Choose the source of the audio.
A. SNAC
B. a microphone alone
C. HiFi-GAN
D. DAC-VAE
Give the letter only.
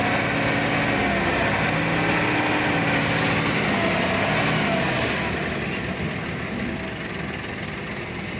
B